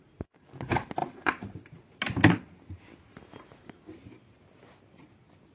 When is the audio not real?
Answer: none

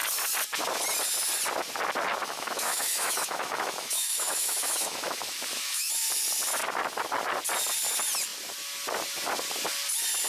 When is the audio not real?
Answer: 2.2-5.9 (autoencoder, DAC-VAE)